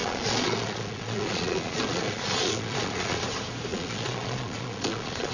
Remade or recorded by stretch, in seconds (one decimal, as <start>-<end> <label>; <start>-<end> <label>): 0.0-3.2 remade; 3.2-3.7 recorded; 3.7-5.3 remade